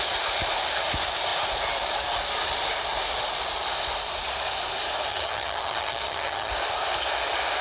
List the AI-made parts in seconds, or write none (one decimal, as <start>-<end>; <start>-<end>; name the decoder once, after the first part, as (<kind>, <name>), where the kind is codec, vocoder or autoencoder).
5.1-6.5 (vocoder, HiFi-GAN)